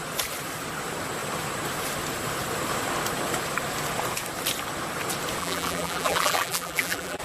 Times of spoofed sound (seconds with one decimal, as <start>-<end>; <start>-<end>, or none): 5.4-7.2